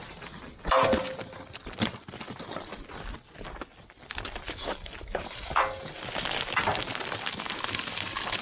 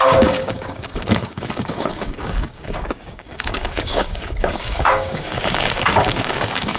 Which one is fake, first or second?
second